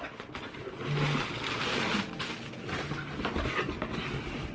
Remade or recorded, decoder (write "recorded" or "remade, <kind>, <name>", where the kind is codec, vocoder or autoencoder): recorded